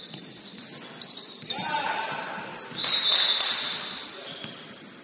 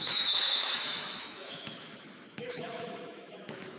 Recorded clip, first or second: first